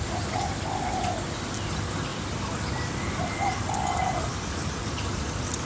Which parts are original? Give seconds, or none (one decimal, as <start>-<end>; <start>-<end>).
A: 0.0-5.6